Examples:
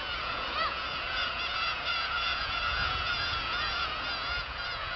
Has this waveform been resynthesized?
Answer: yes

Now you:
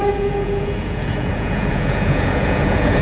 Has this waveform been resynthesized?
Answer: yes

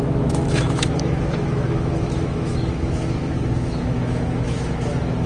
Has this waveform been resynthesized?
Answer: yes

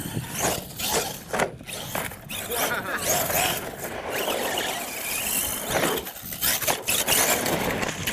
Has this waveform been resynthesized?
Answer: no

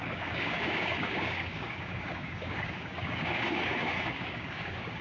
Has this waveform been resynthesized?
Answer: yes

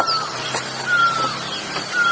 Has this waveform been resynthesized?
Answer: no